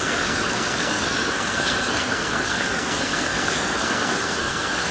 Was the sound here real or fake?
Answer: fake